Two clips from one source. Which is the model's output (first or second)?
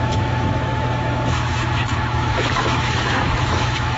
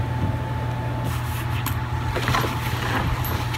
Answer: first